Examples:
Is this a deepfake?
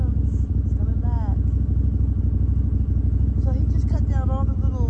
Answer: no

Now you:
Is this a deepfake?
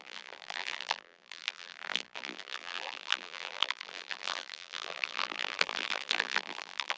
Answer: yes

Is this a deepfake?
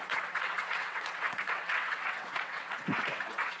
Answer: yes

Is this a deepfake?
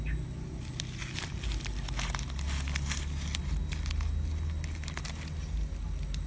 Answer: no